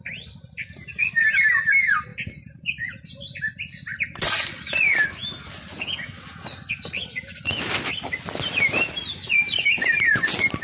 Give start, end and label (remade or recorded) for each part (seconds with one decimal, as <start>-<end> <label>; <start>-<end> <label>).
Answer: 0.0-10.6 recorded